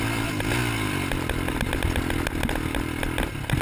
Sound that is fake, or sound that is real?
real